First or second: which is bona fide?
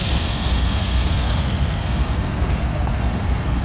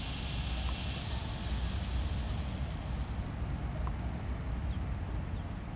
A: second